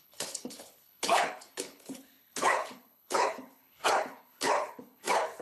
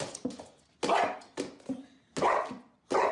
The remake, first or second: first